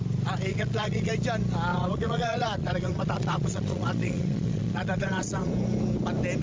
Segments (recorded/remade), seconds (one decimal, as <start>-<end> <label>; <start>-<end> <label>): 0.0-0.5 recorded; 0.5-1.1 remade; 1.1-1.7 recorded; 1.7-5.5 remade; 5.5-6.4 recorded